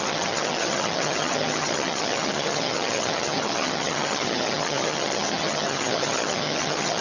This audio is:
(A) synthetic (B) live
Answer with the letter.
A